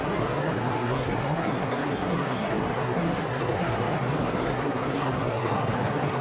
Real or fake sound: fake